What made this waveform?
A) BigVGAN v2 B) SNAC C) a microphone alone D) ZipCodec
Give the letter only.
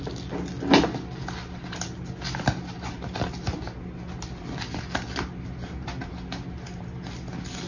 C